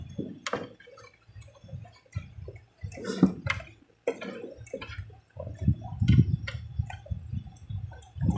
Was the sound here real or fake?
real